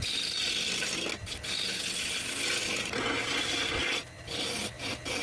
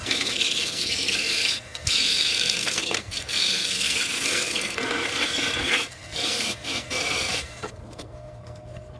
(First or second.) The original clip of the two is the first